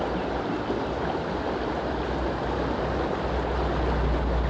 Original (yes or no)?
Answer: yes